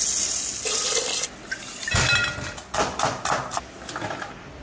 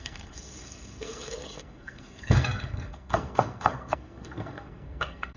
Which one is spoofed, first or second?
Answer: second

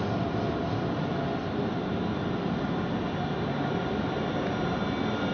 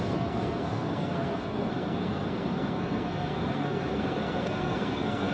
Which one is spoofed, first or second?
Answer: second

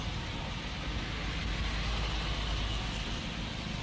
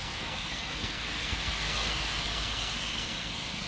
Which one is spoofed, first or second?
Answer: second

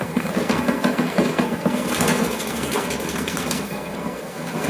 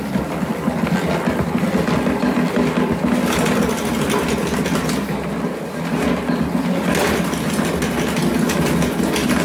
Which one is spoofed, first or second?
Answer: first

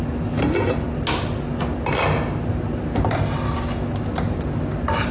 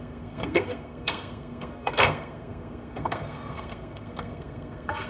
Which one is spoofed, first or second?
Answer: second